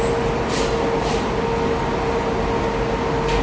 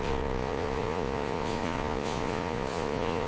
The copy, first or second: second